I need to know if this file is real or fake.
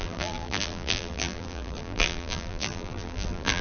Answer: fake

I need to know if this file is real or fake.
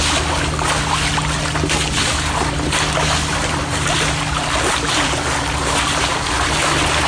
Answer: real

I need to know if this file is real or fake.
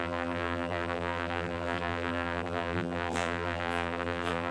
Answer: fake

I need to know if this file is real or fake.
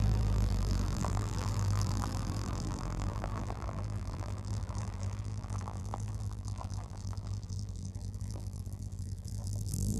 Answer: fake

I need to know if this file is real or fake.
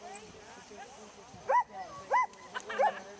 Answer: real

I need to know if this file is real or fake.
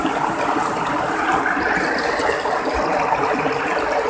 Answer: real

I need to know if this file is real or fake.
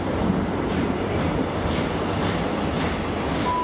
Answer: real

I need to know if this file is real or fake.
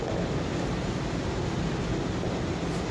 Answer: real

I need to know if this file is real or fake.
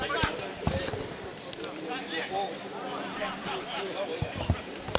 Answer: fake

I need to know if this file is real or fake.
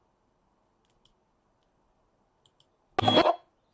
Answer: real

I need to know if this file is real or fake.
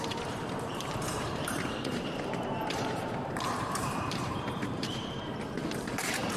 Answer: fake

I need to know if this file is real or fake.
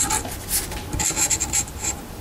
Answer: real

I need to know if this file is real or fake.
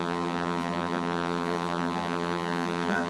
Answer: fake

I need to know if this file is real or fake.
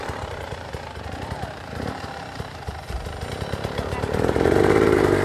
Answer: fake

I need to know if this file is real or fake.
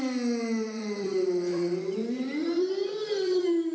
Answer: fake